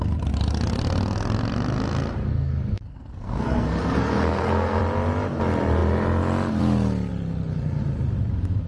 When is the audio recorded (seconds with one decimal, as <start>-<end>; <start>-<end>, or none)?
0.0-2.3; 4.8-8.7